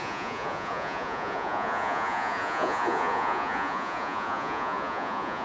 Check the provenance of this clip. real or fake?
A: fake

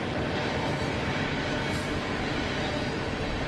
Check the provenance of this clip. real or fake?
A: real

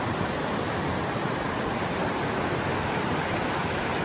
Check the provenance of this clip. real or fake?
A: real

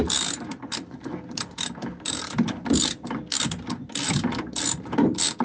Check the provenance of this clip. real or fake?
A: real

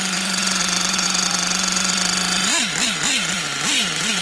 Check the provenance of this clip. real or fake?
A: real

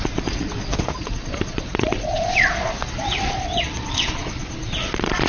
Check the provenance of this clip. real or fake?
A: fake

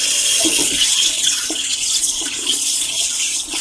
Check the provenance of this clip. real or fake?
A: fake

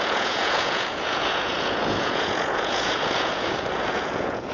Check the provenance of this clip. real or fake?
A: fake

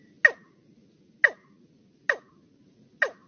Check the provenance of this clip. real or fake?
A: real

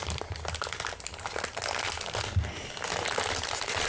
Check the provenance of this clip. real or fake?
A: real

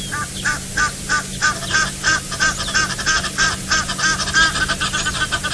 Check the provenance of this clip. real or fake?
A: real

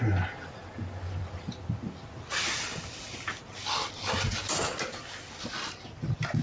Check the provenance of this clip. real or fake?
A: real